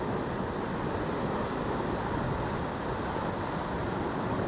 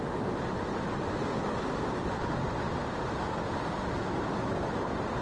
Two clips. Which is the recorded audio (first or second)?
second